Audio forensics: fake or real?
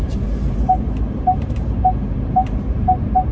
fake